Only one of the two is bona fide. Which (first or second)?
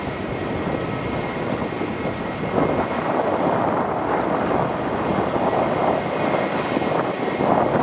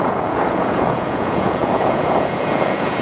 first